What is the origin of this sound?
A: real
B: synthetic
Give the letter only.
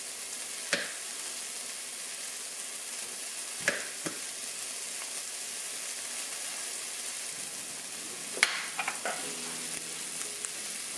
A